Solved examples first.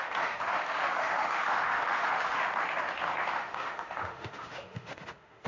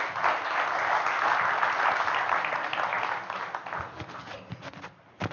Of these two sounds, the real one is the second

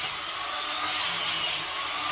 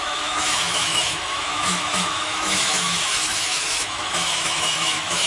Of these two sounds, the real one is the first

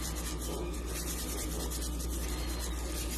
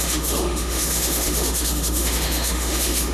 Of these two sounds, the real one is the first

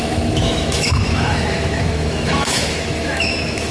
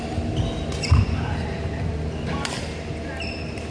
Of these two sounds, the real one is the second